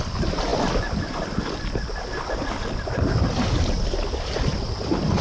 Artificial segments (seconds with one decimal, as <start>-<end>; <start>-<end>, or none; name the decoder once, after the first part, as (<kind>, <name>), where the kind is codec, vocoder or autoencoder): none